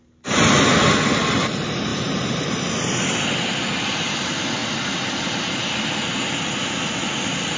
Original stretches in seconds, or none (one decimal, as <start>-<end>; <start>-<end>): 0.0-1.9; 3.4-7.6